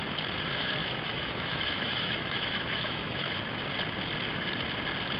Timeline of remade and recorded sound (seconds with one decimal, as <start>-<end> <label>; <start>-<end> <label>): 0.0-0.8 recorded; 0.8-3.4 remade; 3.4-5.2 recorded